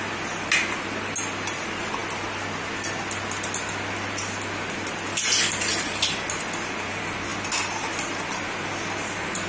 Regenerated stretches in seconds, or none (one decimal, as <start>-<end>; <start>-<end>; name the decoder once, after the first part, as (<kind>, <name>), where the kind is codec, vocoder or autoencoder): none